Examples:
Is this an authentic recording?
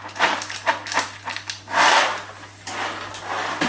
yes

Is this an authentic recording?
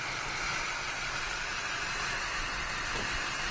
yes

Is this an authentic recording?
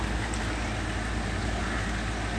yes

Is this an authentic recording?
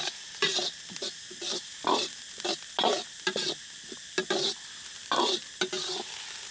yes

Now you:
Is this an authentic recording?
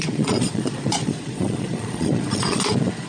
no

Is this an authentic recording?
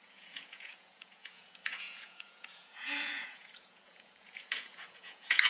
no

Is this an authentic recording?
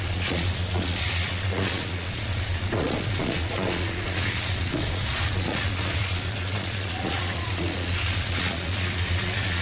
no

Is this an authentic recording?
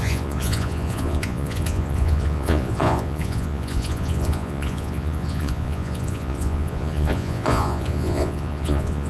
no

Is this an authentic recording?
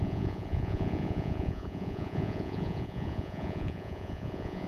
no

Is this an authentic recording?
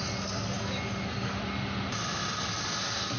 yes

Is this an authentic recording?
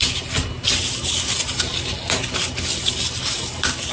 yes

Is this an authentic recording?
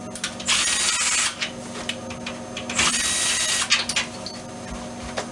yes